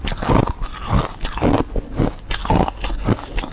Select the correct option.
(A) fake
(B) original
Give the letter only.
B